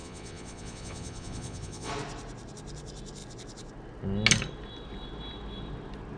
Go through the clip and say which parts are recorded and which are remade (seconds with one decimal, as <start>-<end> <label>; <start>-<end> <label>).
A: 0.0-1.9 remade; 1.9-6.2 recorded